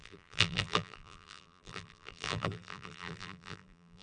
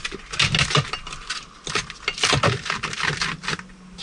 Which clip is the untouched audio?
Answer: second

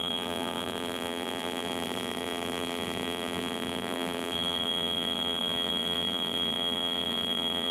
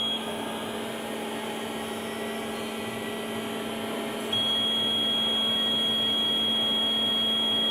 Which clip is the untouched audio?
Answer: second